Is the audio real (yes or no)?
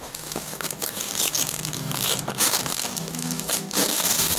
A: no